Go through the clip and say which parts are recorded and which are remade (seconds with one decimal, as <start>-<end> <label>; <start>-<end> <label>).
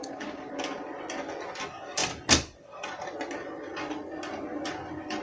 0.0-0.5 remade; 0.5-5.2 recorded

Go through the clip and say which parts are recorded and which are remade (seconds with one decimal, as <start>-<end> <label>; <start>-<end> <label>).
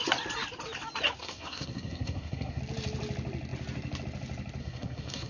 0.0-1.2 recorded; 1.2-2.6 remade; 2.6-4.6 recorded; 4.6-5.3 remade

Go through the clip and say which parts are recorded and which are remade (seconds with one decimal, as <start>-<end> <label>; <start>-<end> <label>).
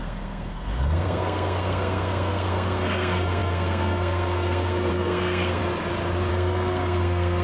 0.0-5.6 remade; 5.6-6.3 recorded; 6.3-7.4 remade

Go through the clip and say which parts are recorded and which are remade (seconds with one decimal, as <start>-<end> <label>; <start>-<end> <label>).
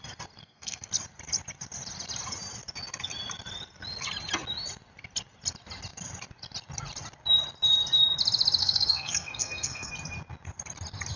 0.0-0.4 recorded; 0.4-0.9 remade; 0.9-8.6 recorded; 8.6-9.9 remade; 9.9-11.2 recorded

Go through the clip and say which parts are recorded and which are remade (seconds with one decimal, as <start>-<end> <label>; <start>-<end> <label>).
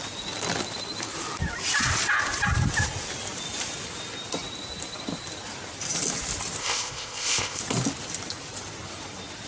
0.0-6.6 recorded; 6.6-7.6 remade; 7.6-9.5 recorded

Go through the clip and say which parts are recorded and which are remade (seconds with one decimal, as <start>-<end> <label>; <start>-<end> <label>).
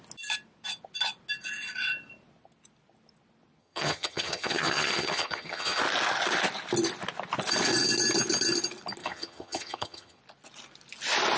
0.0-3.6 recorded; 3.6-5.8 remade; 5.8-9.0 recorded; 9.0-10.2 remade; 10.2-11.4 recorded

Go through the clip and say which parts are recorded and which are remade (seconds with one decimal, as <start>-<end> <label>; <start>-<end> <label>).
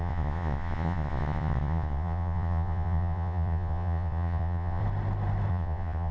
0.0-4.8 remade; 4.8-5.5 recorded; 5.5-6.1 remade